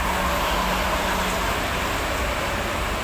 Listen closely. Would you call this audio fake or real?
real